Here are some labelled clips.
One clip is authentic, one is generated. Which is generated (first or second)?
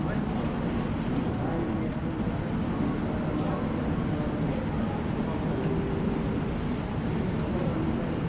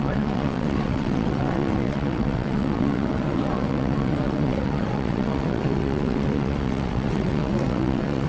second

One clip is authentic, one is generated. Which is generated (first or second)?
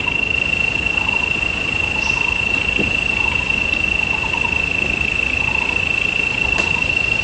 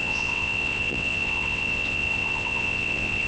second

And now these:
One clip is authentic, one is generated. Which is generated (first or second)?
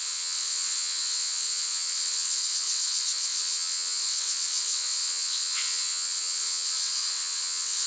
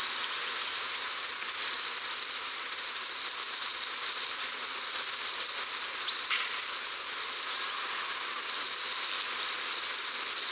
first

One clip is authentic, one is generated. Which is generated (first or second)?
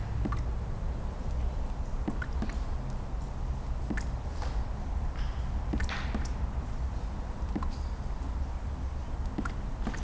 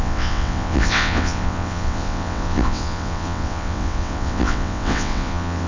second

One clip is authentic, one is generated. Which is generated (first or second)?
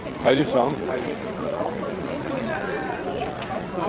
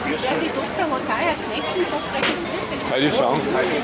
first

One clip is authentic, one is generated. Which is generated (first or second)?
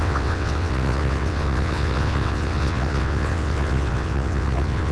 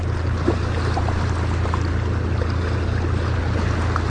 first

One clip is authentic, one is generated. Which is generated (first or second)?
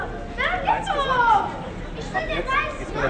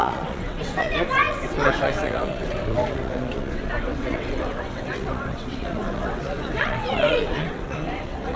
second